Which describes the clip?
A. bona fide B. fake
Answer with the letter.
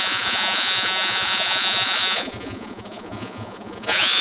B